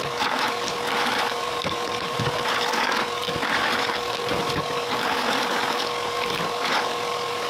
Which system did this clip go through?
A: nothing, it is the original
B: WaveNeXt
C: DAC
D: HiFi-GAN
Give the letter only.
C